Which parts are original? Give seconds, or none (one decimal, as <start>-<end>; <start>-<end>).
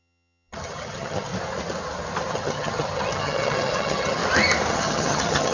1.3-2.3; 4.2-4.7